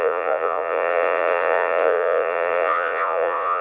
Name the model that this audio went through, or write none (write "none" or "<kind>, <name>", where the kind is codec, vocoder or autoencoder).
vocoder, Vocos